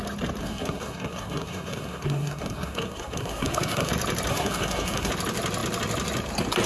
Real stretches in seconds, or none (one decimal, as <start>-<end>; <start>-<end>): 0.0-0.4; 3.9-4.3; 5.1-6.7